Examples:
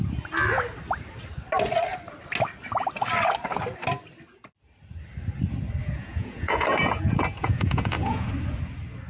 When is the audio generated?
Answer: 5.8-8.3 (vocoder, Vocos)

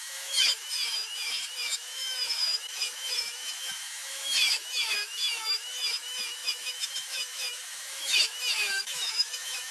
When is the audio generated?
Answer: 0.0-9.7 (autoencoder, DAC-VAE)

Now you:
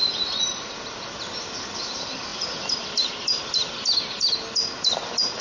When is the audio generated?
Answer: none

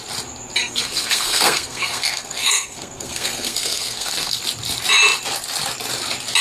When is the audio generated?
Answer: 0.6-4.4 (codec, SNAC)

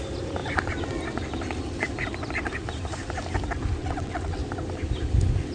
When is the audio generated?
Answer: 3.8-4.4 (vocoder, WaveNeXt)